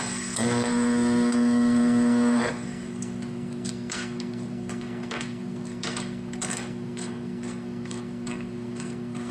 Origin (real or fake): fake